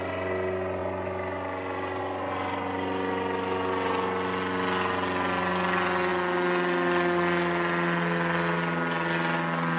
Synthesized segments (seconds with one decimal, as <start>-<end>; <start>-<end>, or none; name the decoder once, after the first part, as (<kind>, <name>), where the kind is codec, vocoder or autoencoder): none